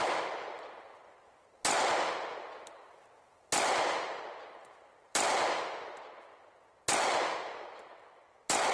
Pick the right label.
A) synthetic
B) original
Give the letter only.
B